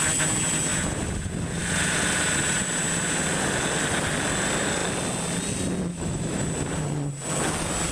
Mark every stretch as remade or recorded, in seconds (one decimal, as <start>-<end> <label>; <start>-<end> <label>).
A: 0.0-5.9 recorded; 5.9-6.4 remade; 6.4-7.9 recorded